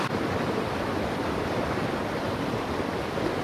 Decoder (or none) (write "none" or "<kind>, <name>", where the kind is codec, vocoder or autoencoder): vocoder, BigVGAN v2